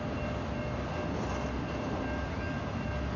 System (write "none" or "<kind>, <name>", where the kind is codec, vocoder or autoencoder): none